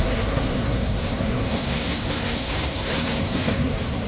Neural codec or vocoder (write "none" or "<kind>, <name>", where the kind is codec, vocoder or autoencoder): codec, SNAC